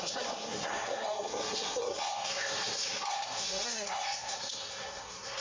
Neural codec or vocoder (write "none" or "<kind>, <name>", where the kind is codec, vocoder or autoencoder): codec, SNAC